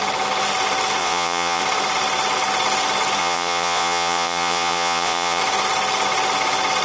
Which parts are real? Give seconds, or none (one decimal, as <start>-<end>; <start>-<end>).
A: 0.0-1.0; 1.6-3.2; 5.4-6.8